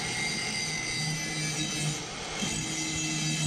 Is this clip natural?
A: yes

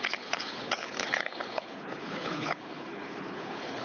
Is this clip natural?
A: no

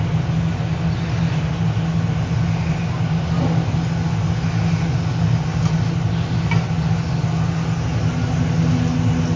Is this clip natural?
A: yes